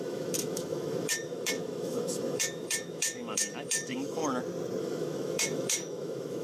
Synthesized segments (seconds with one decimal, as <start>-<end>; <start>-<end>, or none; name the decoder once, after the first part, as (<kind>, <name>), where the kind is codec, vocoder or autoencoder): 0.0-4.2 (autoencoder, DAC-VAE); 4.8-6.4